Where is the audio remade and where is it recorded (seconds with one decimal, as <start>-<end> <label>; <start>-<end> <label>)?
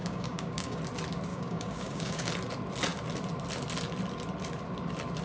0.0-0.8 remade; 0.8-1.3 recorded; 1.3-2.3 remade; 2.3-5.2 recorded